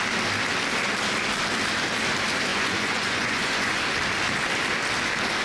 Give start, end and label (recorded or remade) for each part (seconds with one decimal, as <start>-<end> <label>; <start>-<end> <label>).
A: 0.0-2.5 recorded; 2.5-3.8 remade; 3.8-5.4 recorded